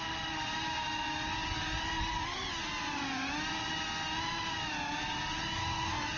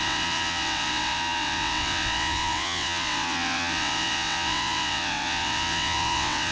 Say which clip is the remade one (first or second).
second